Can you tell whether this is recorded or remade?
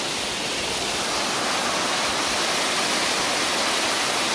recorded